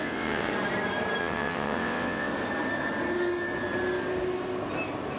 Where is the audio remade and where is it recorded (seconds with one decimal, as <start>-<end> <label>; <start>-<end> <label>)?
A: 0.0-0.5 remade; 0.5-1.2 recorded; 1.2-2.3 remade; 2.3-5.2 recorded